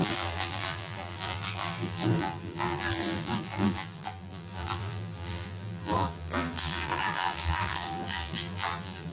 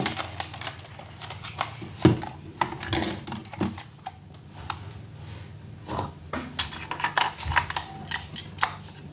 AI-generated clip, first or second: first